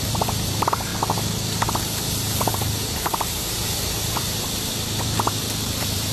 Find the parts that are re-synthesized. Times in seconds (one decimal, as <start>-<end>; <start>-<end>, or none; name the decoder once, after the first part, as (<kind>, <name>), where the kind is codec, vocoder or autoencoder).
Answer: 0.0-0.9 (vocoder, BigVGAN v2); 1.8-6.1